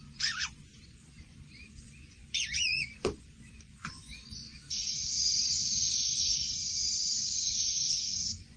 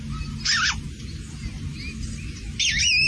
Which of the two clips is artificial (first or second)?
first